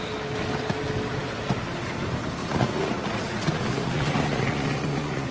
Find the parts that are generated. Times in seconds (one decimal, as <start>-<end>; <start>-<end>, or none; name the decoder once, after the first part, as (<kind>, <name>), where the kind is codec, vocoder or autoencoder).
2.4-5.3 (vocoder, Vocos)